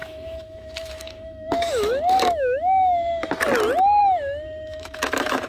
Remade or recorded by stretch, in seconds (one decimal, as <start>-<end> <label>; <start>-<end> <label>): 0.0-3.3 remade; 3.3-4.0 recorded; 4.0-5.5 remade